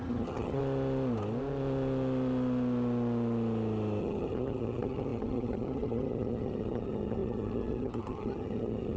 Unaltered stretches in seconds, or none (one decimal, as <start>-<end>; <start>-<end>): 0.6-4.0